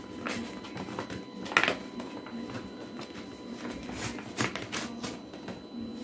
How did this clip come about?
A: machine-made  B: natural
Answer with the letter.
B